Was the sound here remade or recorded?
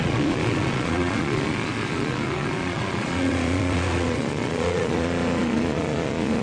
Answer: remade